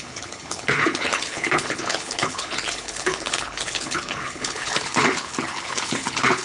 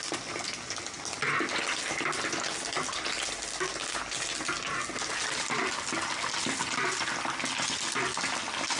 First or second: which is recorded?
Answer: second